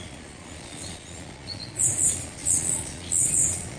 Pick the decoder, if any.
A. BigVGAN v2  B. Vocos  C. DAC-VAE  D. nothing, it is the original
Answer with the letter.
B